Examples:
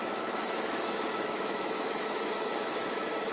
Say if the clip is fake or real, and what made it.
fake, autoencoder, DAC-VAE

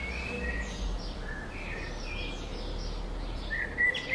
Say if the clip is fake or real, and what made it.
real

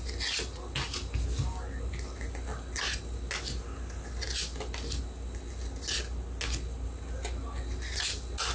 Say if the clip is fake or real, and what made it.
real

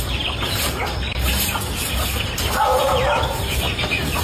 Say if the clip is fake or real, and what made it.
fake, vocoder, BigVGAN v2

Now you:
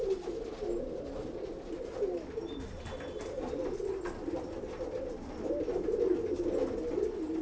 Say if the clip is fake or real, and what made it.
real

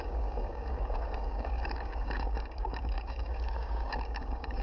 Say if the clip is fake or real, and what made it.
fake, codec, DAC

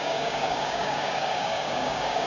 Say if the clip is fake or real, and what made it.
fake, codec, DAC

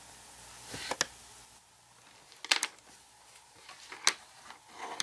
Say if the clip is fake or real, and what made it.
real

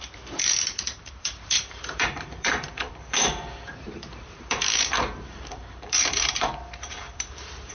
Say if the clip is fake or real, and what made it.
fake, vocoder, BigVGAN v2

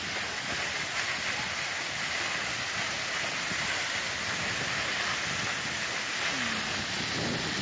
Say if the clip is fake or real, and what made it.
real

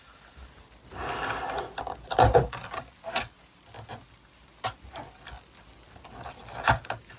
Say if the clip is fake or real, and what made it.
real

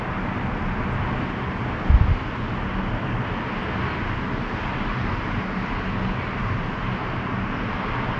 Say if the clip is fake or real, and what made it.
real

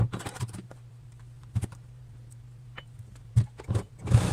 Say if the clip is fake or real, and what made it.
fake, vocoder, BigVGAN v2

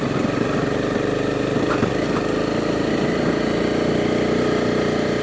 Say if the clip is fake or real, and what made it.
real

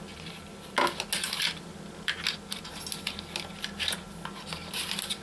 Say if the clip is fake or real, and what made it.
real